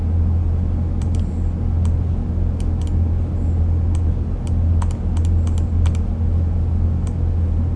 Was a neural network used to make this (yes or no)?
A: no